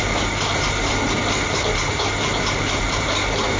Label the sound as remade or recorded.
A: recorded